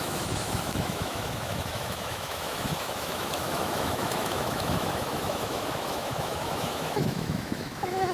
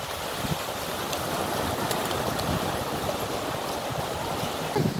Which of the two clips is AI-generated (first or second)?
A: first